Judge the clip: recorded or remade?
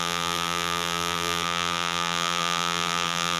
remade